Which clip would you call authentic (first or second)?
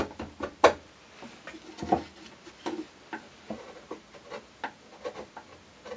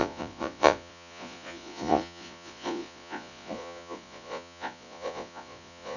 first